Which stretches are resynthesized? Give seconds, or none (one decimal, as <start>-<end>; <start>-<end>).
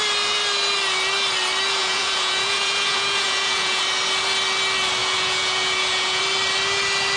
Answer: 1.8-3.8; 5.0-6.2